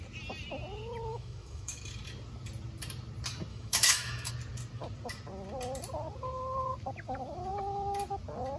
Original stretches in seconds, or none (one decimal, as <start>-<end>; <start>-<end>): 0.0-1.1; 1.8-3.5; 4.3-8.6